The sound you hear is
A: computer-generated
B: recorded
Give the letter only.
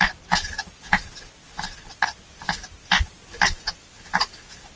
B